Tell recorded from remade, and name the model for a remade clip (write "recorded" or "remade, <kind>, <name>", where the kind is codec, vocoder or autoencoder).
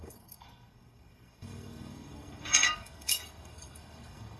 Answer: remade, codec, SNAC